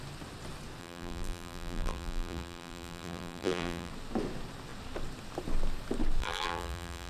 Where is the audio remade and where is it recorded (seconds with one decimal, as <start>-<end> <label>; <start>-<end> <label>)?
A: 0.0-0.8 recorded; 0.8-3.9 remade; 3.9-6.2 recorded; 6.2-7.1 remade